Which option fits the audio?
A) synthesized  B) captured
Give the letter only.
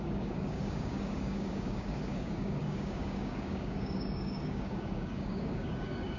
A